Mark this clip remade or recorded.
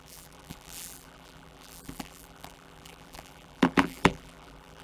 remade